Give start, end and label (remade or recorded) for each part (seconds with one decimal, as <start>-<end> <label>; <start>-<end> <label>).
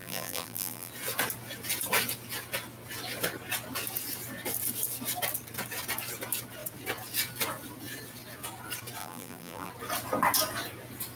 0.0-0.9 remade; 0.9-9.0 recorded; 9.0-9.7 remade; 9.7-11.2 recorded